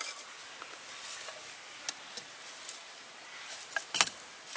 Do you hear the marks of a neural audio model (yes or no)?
no